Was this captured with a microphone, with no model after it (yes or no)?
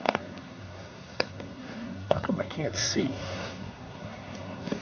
no